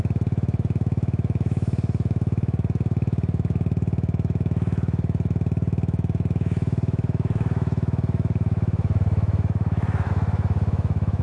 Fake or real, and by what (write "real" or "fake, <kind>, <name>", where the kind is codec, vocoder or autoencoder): fake, autoencoder, DAC-VAE